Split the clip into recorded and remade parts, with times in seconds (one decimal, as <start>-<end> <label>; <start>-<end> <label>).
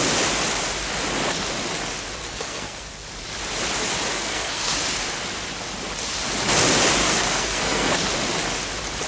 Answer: 0.0-2.2 recorded; 2.2-2.9 remade; 2.9-4.1 recorded; 4.1-4.7 remade; 4.7-7.0 recorded; 7.0-7.9 remade; 7.9-9.1 recorded